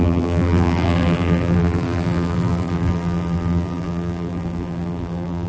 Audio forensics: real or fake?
fake